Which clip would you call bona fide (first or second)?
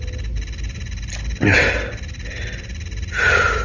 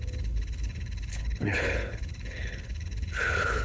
first